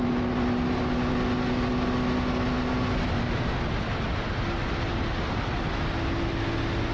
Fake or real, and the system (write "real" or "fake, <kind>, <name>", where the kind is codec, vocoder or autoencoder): real